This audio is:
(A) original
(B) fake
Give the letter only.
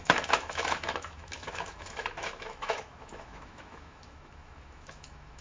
B